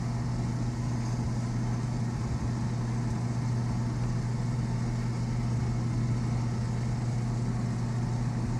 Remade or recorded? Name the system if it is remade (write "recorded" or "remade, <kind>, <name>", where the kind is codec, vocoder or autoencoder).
recorded